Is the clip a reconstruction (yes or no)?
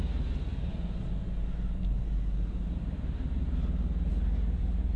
no